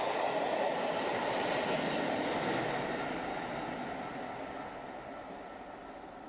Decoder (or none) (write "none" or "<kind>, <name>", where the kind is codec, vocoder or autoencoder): none